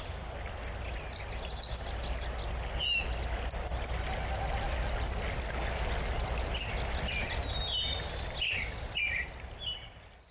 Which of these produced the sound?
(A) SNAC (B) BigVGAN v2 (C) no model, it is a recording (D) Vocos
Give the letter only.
C